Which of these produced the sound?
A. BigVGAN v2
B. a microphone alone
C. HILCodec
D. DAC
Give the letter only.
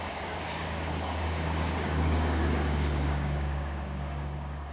D